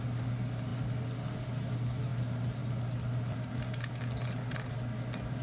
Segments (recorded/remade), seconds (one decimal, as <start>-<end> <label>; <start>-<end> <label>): 0.0-5.4 recorded